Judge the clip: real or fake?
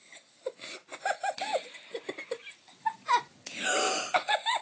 real